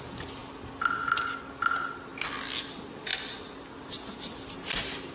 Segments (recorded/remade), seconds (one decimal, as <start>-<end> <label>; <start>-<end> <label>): 0.0-5.1 recorded